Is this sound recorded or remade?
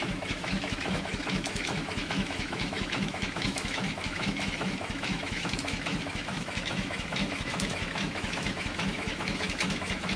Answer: remade